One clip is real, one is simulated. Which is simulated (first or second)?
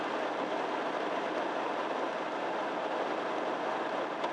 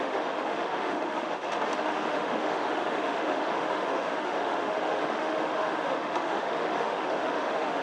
second